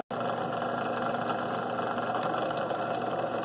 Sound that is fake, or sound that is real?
real